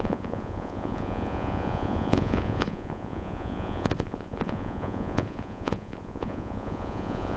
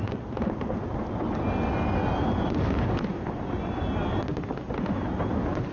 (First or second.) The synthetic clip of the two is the first